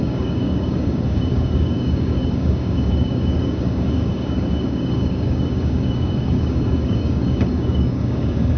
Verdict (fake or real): fake